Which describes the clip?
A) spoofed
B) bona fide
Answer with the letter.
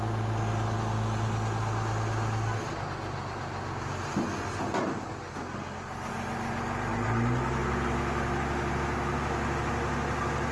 B